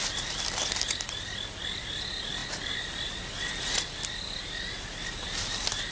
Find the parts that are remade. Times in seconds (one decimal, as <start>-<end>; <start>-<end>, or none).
none